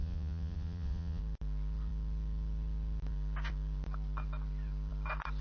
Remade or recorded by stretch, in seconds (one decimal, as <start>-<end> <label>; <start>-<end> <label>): 0.0-1.2 remade; 1.2-5.4 recorded